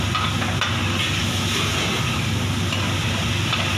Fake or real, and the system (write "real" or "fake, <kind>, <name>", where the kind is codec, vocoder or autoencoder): real